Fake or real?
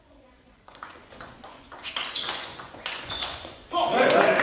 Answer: fake